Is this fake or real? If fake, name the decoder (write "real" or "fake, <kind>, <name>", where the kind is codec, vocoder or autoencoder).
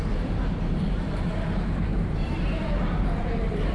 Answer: fake, vocoder, BigVGAN v2